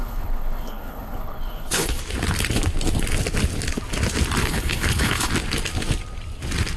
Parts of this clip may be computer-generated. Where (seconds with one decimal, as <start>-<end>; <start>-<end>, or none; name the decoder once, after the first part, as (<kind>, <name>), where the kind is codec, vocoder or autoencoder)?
0.0-2.0 (codec, HILCodec); 4.4-5.3